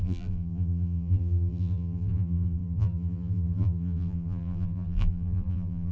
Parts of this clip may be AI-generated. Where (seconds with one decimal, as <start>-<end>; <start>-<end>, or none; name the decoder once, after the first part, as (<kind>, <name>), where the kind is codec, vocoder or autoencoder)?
0.0-5.9 (vocoder, BigVGAN v2)